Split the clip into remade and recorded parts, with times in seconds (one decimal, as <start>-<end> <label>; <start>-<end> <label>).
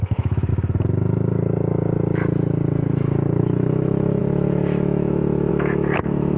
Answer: 0.0-0.5 remade; 0.5-3.4 recorded; 3.4-6.4 remade